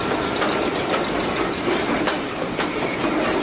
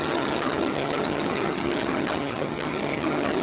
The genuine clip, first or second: first